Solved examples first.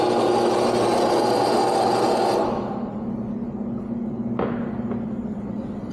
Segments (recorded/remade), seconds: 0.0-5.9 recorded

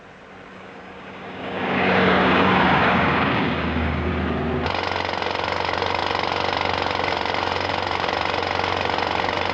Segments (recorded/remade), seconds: 0.0-0.5 recorded; 0.5-4.1 remade; 4.1-9.5 recorded

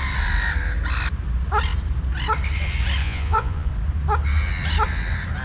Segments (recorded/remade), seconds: 0.0-3.0 recorded; 3.0-3.7 remade; 3.7-5.4 recorded

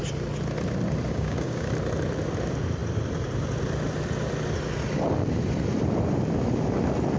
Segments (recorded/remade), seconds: 0.0-1.1 recorded; 1.1-1.7 remade; 1.7-7.2 recorded

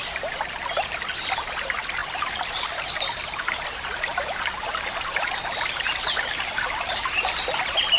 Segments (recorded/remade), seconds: 0.0-2.0 recorded; 2.0-2.6 remade; 2.6-8.0 recorded

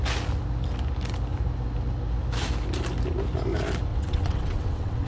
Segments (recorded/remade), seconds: 0.0-3.9 recorded; 3.9-5.1 remade

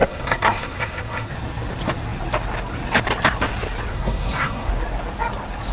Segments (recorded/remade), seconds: 0.0-1.3 remade; 1.3-3.9 recorded; 3.9-4.7 remade; 4.7-5.7 recorded